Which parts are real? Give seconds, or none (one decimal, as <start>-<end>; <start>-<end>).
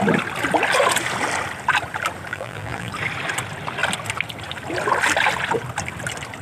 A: 0.0-2.3; 2.9-6.4